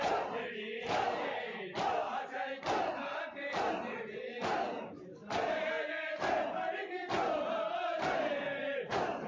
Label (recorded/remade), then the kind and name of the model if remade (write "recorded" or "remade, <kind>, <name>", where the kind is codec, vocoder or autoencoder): recorded